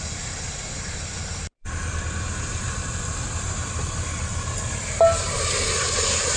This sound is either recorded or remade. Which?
recorded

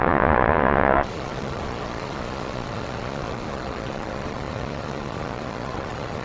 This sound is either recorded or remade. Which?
remade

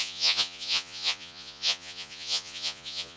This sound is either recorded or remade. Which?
remade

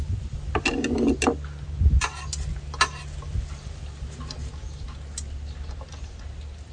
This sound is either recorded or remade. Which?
recorded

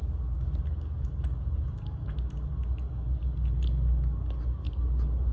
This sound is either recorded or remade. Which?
recorded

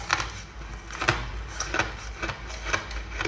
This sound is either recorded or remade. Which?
recorded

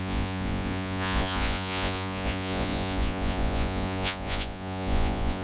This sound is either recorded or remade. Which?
remade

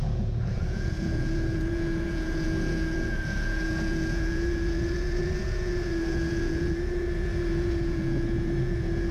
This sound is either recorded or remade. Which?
remade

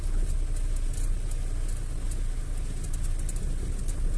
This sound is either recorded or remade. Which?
recorded